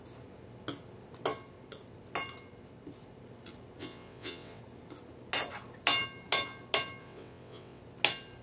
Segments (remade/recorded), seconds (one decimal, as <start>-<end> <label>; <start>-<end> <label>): 0.0-3.8 recorded; 3.8-4.6 remade; 4.6-7.0 recorded; 7.0-7.8 remade; 7.8-8.4 recorded